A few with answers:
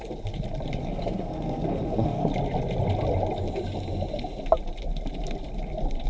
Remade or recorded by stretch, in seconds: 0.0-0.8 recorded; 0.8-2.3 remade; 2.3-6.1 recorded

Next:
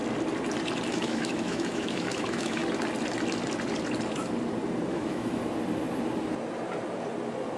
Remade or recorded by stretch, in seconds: 0.0-0.9 recorded; 0.9-2.6 remade; 2.6-4.9 recorded; 4.9-5.4 remade; 5.4-7.6 recorded

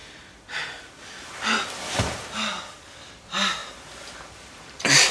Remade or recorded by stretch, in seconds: 0.0-3.1 recorded; 3.1-3.6 remade; 3.6-4.3 recorded; 4.3-5.1 remade

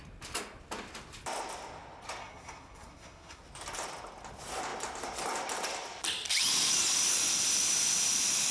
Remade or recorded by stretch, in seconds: 0.0-2.2 recorded; 2.2-3.4 remade; 3.4-8.5 recorded

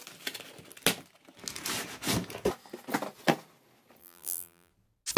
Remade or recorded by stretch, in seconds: 0.0-4.0 recorded; 4.0-4.7 remade; 4.7-5.2 recorded